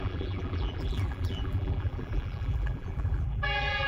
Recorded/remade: remade